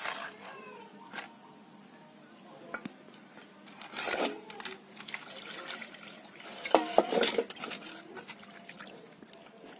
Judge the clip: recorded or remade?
recorded